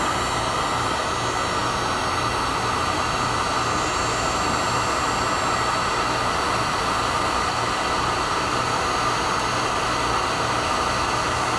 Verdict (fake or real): real